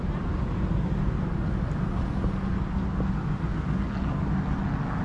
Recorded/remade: recorded